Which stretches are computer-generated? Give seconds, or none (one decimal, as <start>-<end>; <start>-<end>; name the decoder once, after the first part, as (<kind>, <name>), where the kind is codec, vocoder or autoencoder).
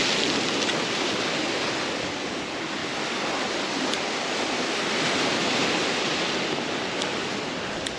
none